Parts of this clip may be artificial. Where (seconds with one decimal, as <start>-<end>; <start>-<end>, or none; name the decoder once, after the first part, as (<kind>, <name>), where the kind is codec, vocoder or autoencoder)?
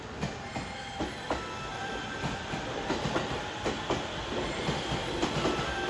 1.7-5.2 (vocoder, BigVGAN v2)